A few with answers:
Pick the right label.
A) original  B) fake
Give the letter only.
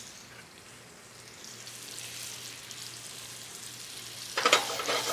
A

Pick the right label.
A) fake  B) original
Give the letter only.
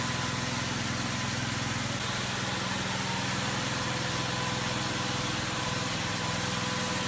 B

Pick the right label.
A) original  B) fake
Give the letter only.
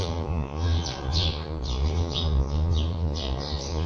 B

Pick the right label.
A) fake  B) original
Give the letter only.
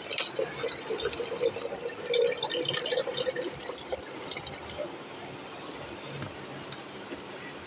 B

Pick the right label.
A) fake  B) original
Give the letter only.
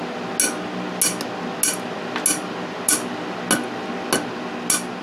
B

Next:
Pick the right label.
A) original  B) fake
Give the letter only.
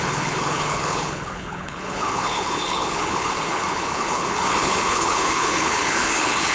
B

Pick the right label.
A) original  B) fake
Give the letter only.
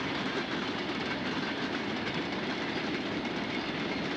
A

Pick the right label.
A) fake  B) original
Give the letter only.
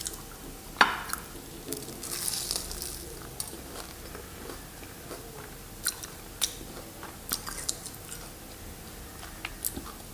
B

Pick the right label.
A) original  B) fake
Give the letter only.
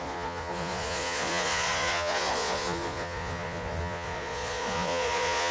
B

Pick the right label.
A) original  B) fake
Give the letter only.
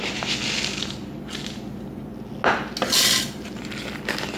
A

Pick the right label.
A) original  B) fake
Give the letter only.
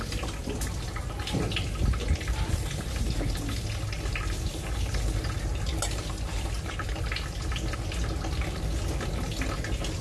A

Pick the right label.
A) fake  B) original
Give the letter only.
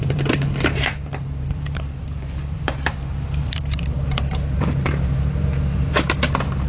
A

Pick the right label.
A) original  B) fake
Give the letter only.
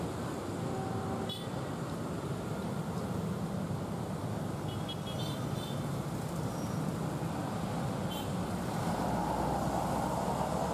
A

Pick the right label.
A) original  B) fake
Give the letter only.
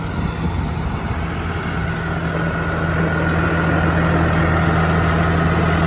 A